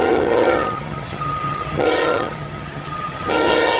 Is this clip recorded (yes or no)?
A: no